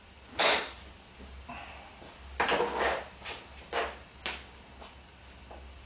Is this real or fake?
real